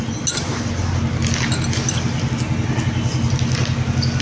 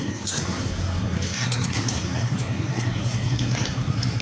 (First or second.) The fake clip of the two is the second